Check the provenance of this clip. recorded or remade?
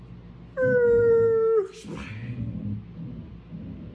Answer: recorded